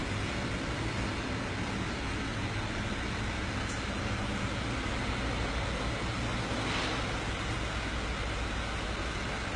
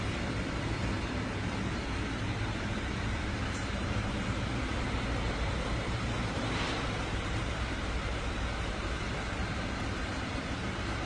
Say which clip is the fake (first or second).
second